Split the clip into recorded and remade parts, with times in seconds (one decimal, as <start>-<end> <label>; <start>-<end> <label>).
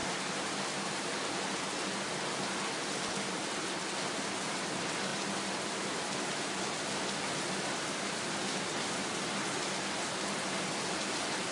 0.0-1.3 remade; 1.3-11.5 recorded